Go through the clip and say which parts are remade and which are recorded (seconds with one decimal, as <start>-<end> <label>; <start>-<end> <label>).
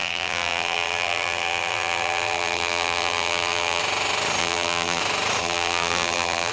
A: 0.0-3.8 remade; 3.8-4.4 recorded; 4.4-5.0 remade; 5.0-5.4 recorded; 5.4-6.5 remade